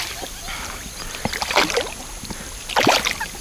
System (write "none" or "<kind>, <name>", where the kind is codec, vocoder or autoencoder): none